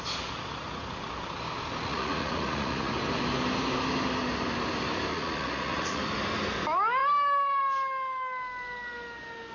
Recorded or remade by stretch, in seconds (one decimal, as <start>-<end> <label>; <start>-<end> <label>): 0.0-1.8 recorded; 1.8-2.9 remade; 2.9-5.1 recorded; 5.1-6.0 remade; 6.0-9.5 recorded